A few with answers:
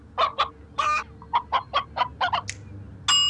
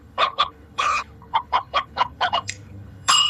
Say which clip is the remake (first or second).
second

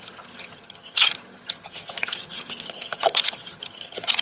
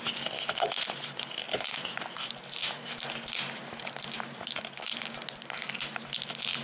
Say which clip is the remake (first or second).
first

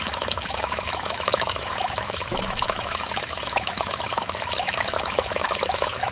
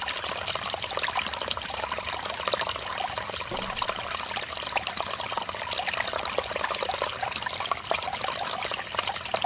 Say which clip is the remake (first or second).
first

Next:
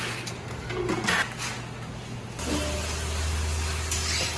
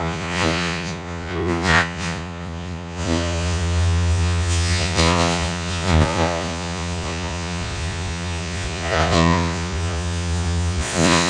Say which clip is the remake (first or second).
second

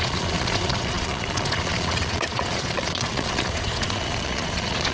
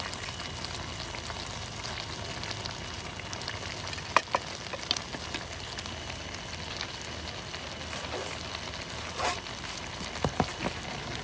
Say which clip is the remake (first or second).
first